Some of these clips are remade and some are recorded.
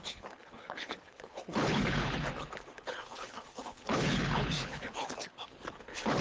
remade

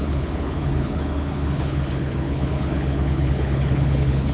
remade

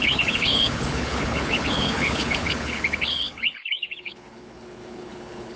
remade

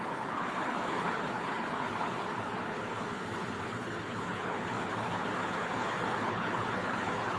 remade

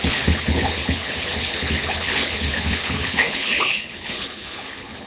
remade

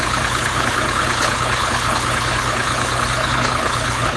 remade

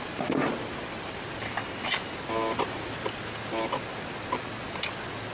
recorded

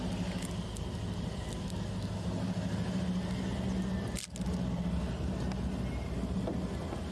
recorded